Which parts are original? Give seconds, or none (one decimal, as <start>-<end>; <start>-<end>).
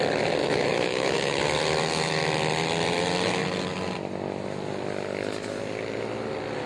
0.0-0.4; 1.4-6.7